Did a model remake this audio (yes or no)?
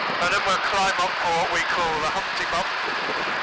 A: no